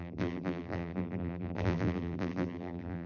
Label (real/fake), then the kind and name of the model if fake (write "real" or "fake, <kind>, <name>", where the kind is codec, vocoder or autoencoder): fake, vocoder, BigVGAN v2